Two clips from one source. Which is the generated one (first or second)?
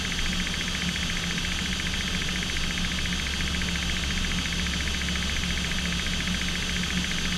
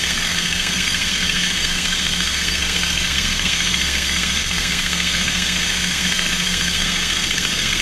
second